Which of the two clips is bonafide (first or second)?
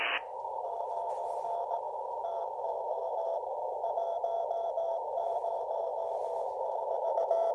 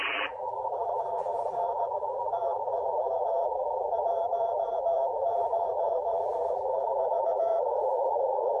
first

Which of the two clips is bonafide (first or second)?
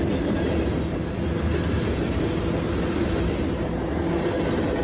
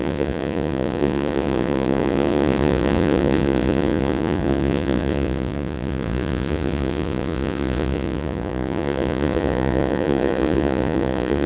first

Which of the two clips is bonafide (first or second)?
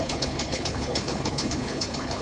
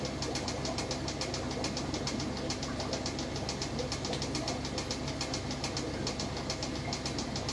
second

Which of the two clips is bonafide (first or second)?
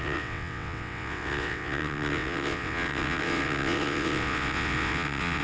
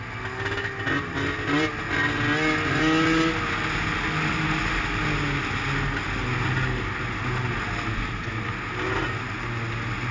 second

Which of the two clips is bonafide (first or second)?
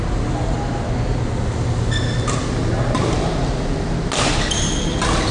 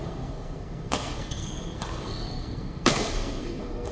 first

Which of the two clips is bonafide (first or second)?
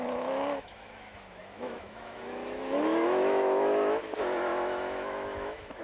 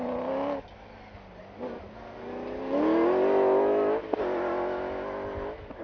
second